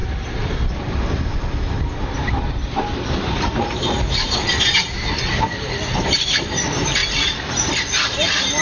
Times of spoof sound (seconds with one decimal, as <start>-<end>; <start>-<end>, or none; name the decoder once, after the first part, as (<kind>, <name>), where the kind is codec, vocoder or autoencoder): 0.0-3.5 (vocoder, BigVGAN v2); 5.3-7.0; 7.7-8.6